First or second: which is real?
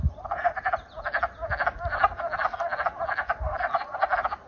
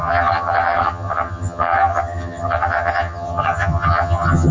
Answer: first